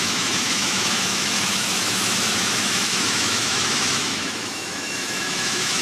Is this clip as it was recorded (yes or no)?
no